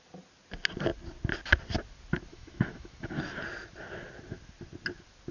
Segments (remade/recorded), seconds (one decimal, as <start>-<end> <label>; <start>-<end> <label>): 0.0-2.3 recorded; 2.3-3.2 remade; 3.2-5.3 recorded